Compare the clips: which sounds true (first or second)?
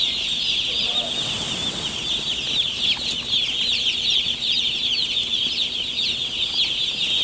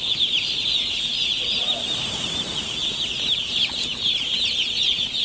first